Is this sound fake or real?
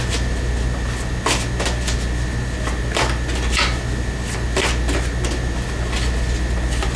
real